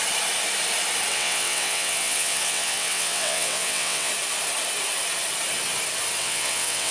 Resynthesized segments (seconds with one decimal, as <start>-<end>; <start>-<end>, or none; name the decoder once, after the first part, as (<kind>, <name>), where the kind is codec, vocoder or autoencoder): 1.1-4.1 (vocoder, WaveNeXt); 6.2-6.9